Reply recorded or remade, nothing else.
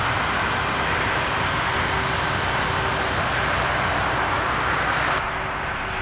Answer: recorded